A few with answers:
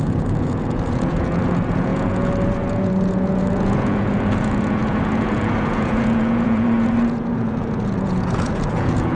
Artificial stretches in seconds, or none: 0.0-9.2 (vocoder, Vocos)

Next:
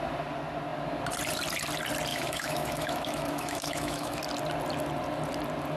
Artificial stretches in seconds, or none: 2.1-4.2 (autoencoder, DAC-VAE)

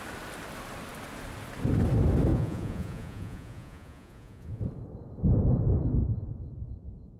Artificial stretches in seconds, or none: 2.3-4.6 (vocoder, Vocos); 6.0-7.2

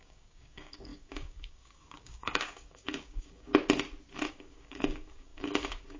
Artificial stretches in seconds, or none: 0.0-3.5 (codec, DAC); 4.3-6.0

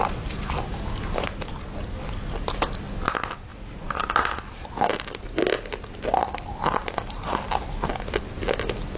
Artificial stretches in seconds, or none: 3.5-4.0 (vocoder, Vocos)

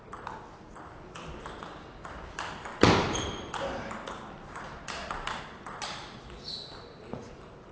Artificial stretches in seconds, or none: 2.7-5.4 (vocoder, BigVGAN v2); 7.2-7.7

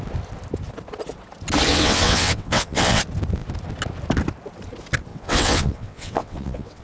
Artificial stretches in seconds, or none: 1.7-3.0 (vocoder, WaveNeXt); 5.1-6.8